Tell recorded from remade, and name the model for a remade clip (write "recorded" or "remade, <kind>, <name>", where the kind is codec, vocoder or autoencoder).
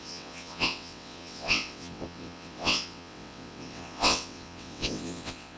remade, vocoder, WaveNeXt